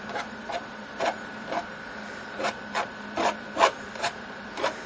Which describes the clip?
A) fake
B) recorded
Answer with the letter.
A